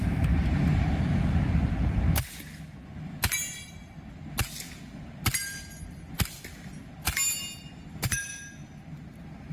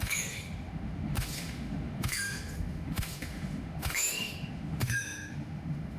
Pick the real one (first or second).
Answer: first